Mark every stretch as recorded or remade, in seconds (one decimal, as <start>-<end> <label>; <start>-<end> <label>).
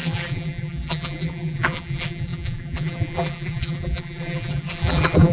0.0-5.3 remade